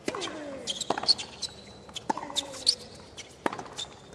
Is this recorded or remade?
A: recorded